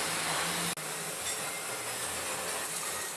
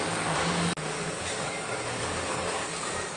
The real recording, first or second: first